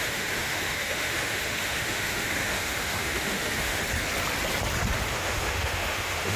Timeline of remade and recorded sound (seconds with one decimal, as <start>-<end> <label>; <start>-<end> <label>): 0.0-3.8 remade; 3.8-5.1 recorded; 5.1-6.4 remade